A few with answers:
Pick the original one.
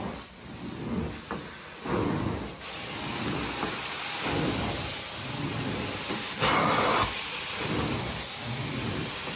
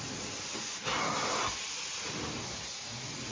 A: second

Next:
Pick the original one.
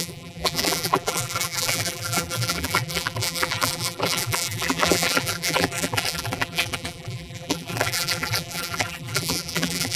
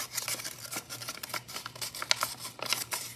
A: second